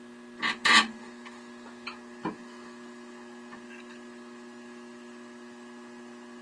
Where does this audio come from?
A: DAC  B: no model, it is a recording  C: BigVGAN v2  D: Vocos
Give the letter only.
B